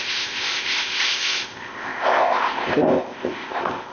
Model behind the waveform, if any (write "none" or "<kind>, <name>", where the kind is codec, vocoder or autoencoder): codec, ZipCodec